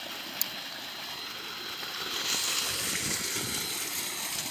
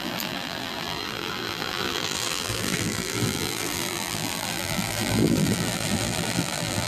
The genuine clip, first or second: first